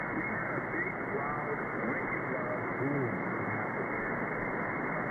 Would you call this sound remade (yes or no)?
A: no